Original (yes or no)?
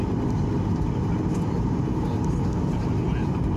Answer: yes